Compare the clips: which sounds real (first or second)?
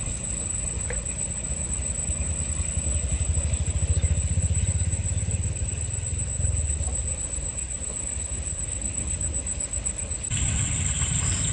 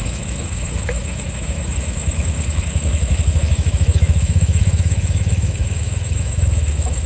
first